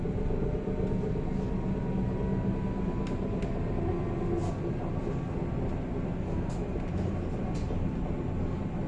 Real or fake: real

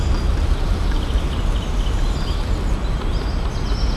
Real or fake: real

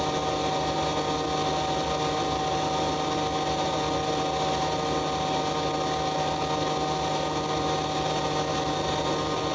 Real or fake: real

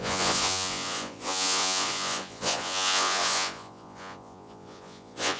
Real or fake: fake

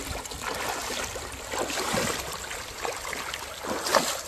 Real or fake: real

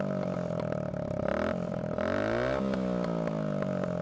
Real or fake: real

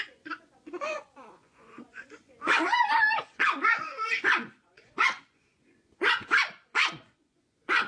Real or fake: fake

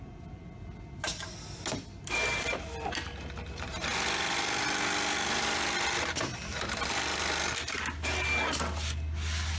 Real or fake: real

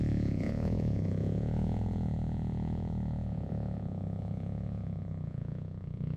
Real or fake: fake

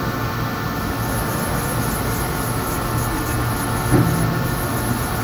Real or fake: real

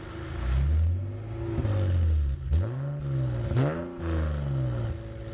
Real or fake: real